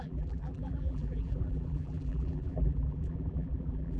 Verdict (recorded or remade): remade